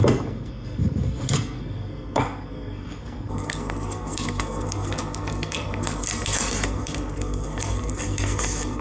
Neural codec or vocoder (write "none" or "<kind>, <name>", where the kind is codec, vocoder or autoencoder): codec, SNAC